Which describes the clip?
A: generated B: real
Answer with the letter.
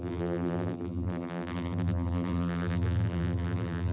A